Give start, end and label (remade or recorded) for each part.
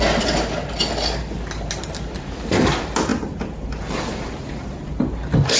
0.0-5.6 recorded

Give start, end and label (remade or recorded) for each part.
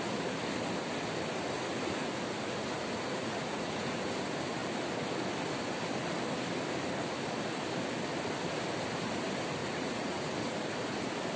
0.0-3.1 recorded; 3.1-4.1 remade; 4.1-9.6 recorded; 9.6-10.3 remade; 10.3-11.4 recorded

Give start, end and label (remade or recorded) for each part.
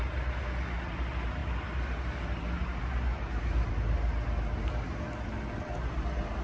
0.0-6.4 recorded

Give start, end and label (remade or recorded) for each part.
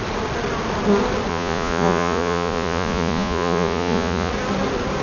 0.0-1.3 recorded; 1.3-4.3 remade; 4.3-5.0 recorded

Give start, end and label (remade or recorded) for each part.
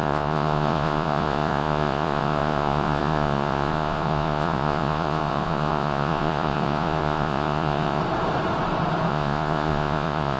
0.0-8.0 remade; 8.0-9.1 recorded; 9.1-10.4 remade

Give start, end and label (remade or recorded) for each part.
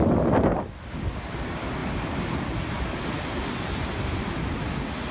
0.0-5.1 recorded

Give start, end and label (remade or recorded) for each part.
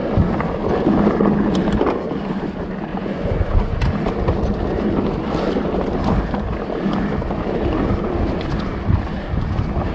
0.0-2.9 recorded; 2.9-3.8 remade; 3.8-9.9 recorded